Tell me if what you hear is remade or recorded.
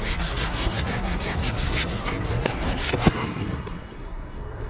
remade